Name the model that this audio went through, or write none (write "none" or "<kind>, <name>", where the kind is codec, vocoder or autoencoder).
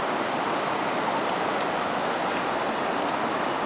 none